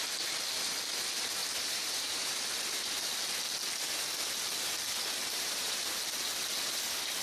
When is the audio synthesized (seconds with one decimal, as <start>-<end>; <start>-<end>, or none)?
1.4-2.3; 5.2-5.8